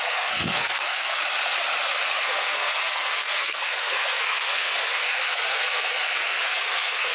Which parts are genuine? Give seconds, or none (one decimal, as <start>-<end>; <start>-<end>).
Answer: 1.2-2.2